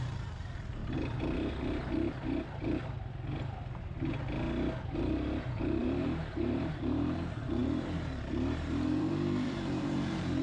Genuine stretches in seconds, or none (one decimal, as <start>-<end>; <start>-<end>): 0.8-4.8